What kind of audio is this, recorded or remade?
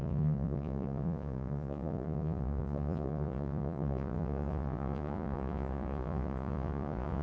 remade